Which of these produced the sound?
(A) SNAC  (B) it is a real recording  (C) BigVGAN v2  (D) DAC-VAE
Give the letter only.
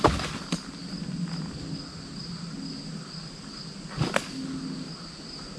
B